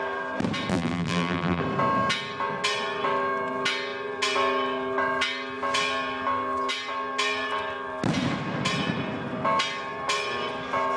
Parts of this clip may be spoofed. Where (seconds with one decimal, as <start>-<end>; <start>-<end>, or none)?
0.7-1.6